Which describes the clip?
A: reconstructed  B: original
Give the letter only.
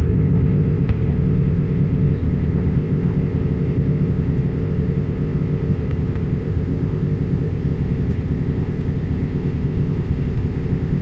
A